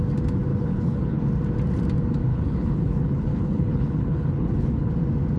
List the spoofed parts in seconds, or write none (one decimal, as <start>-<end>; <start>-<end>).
0.5-1.3; 2.3-4.9